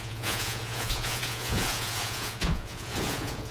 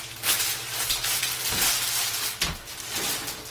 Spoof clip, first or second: first